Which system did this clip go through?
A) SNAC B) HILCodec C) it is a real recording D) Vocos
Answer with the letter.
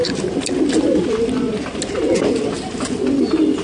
C